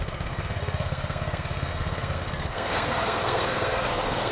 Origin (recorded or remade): remade